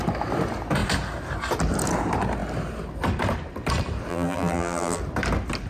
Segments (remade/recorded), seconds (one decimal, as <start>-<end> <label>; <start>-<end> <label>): 0.0-4.1 recorded; 4.1-5.0 remade; 5.0-5.7 recorded